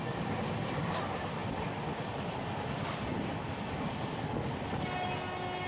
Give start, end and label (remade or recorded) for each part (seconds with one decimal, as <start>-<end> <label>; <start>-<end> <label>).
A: 0.0-5.7 recorded